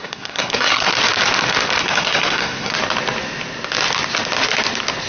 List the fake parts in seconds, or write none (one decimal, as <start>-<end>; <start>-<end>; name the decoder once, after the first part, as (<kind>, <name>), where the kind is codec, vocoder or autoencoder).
0.0-0.9 (codec, SNAC); 1.8-2.7